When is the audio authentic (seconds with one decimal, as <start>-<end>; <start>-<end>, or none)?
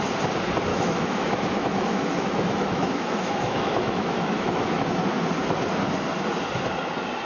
0.0-0.7; 4.9-7.3